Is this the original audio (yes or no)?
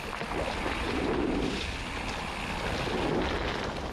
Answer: yes